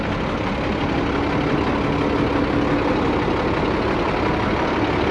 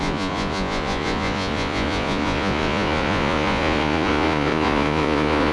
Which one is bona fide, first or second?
first